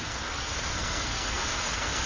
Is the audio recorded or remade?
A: remade